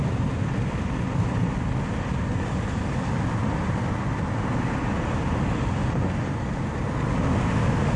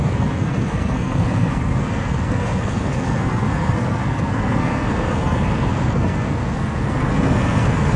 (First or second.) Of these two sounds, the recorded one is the first